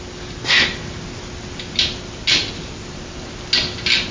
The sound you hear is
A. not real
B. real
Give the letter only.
B